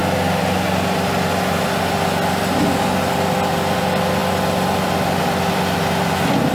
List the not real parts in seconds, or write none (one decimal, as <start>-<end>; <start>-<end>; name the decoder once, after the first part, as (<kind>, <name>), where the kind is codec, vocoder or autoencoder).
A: none